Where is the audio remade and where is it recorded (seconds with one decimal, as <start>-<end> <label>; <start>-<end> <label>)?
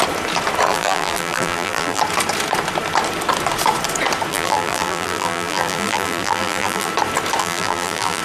0.0-0.7 recorded; 0.7-2.0 remade; 2.0-4.3 recorded; 4.3-6.9 remade; 6.9-7.4 recorded; 7.4-8.2 remade